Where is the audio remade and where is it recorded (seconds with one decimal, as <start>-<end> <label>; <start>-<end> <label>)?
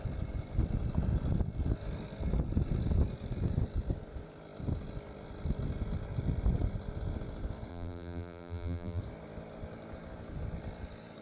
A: 0.0-7.7 recorded; 7.7-9.0 remade; 9.0-11.2 recorded